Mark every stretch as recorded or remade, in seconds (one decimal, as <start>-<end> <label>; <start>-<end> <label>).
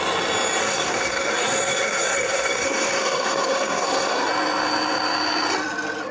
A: 0.0-0.6 recorded; 0.6-4.3 remade; 4.3-6.1 recorded